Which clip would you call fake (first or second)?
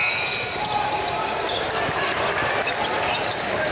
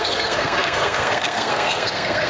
second